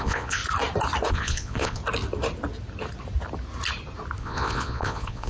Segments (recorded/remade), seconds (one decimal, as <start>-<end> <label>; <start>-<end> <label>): 0.0-0.4 remade; 0.4-1.1 recorded; 1.1-1.8 remade; 1.8-4.2 recorded; 4.2-5.3 remade